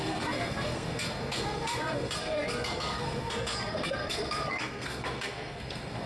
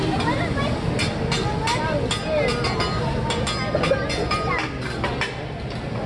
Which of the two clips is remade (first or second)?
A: first